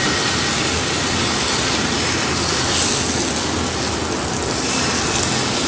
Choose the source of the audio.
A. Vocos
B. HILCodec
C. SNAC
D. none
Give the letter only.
D